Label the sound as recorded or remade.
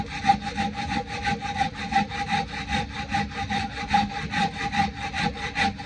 recorded